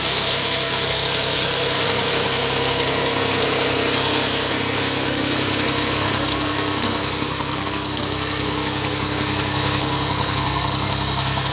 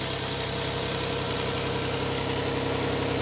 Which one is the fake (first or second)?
first